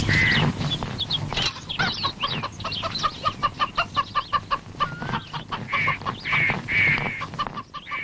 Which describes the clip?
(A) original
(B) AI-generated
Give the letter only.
A